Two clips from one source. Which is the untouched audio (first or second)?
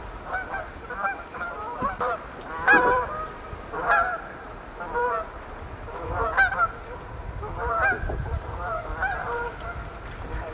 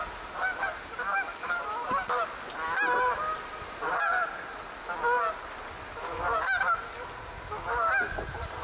second